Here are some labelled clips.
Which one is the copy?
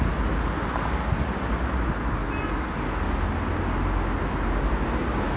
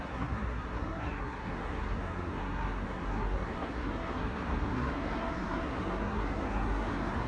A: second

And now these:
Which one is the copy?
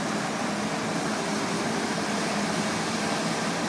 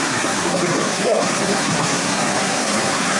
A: second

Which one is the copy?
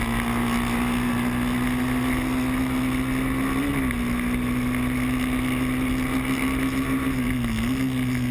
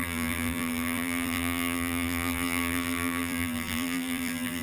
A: second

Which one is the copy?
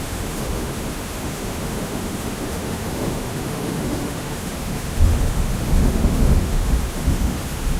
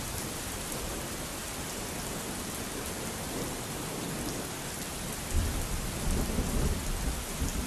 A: first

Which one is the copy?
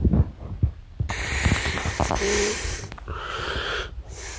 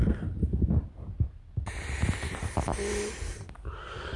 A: first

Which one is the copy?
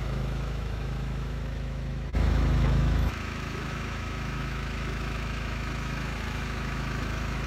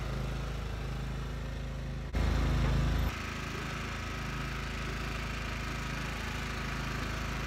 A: first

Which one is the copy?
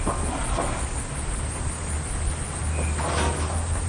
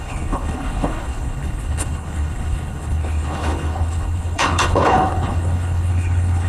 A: second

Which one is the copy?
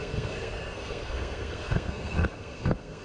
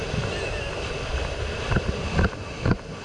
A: first